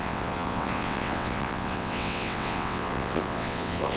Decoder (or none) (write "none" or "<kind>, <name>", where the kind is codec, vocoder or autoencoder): vocoder, WaveNeXt